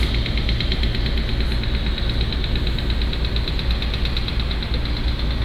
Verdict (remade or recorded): recorded